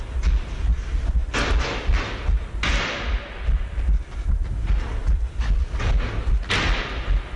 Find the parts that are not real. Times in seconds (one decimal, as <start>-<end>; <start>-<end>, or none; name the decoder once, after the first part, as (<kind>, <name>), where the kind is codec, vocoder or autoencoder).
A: none